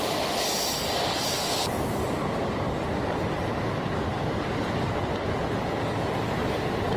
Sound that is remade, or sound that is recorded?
recorded